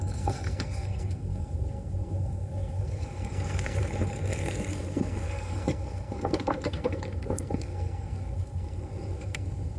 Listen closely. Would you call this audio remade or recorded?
remade